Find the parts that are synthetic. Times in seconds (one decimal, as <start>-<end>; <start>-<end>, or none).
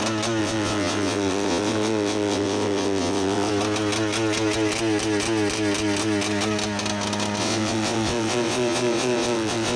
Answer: 0.4-3.5; 7.4-9.8